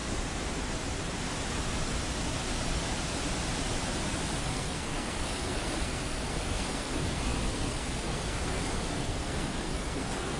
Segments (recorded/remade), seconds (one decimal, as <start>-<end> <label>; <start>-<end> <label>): 0.0-4.4 recorded; 4.4-10.4 remade